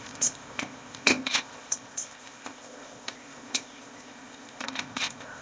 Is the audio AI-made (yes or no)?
yes